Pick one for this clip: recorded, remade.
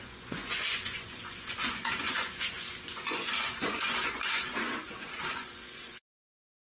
remade